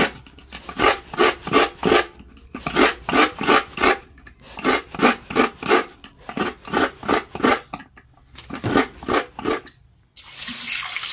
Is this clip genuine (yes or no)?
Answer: yes